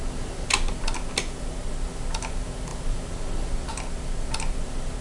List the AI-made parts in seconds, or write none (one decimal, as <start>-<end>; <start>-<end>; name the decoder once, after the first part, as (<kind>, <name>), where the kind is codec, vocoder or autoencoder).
none